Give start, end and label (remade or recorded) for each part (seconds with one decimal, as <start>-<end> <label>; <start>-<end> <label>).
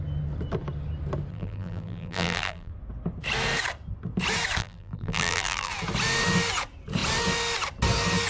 0.0-1.3 recorded; 1.3-2.7 remade; 2.7-4.6 recorded; 4.6-5.7 remade; 5.7-8.3 recorded